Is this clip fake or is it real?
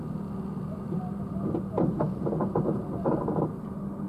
fake